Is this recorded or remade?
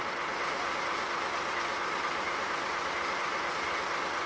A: recorded